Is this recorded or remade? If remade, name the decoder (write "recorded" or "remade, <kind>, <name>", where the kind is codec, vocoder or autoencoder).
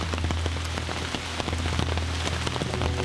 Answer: recorded